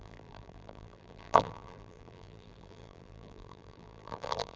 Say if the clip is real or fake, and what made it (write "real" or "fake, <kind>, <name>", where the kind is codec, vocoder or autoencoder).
fake, vocoder, BigVGAN v2